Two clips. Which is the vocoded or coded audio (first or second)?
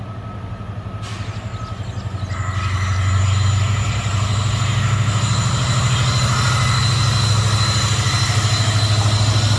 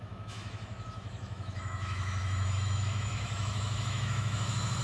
second